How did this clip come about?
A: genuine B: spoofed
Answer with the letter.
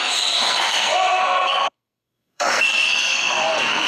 B